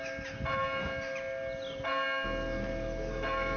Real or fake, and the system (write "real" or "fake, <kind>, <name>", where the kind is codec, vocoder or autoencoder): real